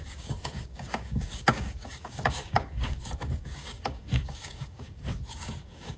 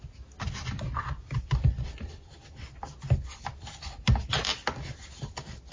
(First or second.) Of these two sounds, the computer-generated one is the first